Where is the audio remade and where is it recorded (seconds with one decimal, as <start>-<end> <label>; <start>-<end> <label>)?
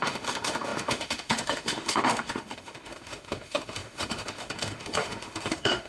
0.0-5.9 remade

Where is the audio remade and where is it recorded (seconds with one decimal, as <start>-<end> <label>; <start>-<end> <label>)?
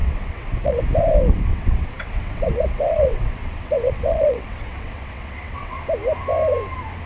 0.0-0.8 remade; 0.8-1.5 recorded; 1.5-5.8 remade; 5.8-7.1 recorded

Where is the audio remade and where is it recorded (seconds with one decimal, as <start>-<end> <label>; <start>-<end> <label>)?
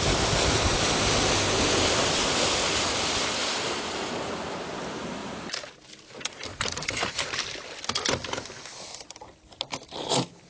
0.0-3.4 recorded; 3.4-4.1 remade; 4.1-5.2 recorded; 5.2-5.9 remade; 5.9-6.5 recorded; 6.5-7.0 remade; 7.0-10.5 recorded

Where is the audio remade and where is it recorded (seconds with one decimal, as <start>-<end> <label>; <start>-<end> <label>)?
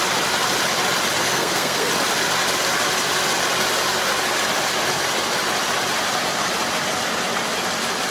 0.0-1.2 recorded; 1.2-1.9 remade; 1.9-8.1 recorded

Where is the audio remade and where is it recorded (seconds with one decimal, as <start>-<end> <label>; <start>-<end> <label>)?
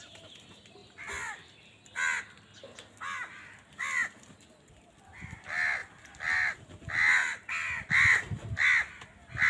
0.0-5.8 recorded; 5.8-6.6 remade; 6.6-9.5 recorded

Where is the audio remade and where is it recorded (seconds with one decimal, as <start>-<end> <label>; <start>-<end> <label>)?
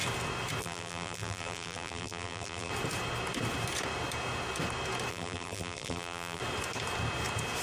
0.0-0.6 recorded; 0.6-2.7 remade; 2.7-5.1 recorded; 5.1-6.4 remade; 6.4-7.6 recorded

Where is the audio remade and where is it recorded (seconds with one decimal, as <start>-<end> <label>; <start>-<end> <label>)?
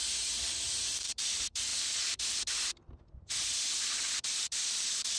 0.0-1.1 recorded; 1.1-1.7 remade; 1.7-4.8 recorded; 4.8-5.2 remade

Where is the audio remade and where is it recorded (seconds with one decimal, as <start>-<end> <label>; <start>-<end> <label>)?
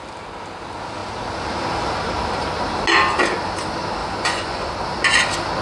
0.0-4.0 recorded; 4.0-4.7 remade; 4.7-5.6 recorded